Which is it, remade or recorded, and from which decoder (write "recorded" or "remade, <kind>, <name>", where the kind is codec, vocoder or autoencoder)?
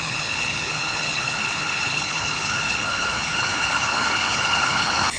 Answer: remade, codec, HILCodec